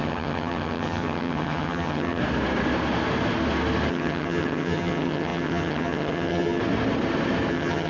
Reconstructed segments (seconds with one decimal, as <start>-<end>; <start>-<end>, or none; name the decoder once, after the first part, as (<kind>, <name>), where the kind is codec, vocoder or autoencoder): 0.0-2.2 (vocoder, HiFi-GAN); 3.9-6.6; 7.5-7.9